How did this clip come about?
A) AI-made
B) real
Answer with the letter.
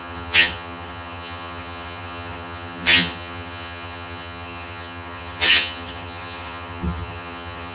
A